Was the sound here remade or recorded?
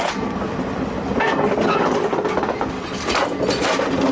recorded